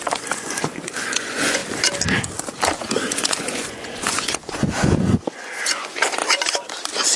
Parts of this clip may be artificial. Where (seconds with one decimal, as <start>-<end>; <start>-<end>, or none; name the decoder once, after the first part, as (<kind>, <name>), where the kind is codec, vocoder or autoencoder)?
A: 0.0-1.6 (vocoder, Vocos); 3.1-6.2